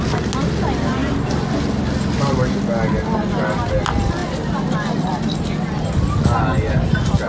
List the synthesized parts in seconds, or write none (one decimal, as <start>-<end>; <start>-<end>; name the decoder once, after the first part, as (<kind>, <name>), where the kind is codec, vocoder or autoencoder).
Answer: none